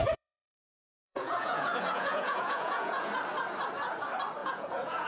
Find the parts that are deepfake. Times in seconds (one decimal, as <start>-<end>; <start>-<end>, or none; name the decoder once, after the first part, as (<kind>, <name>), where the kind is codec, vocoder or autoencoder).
0.0-3.1 (vocoder, Vocos); 4.4-5.1